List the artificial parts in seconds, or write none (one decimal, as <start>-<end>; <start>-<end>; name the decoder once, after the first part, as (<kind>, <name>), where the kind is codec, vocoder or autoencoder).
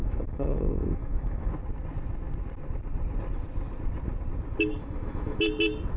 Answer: 0.0-1.5 (autoencoder, DAC-VAE); 4.8-5.4